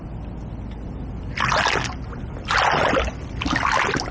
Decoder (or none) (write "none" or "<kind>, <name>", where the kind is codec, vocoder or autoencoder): none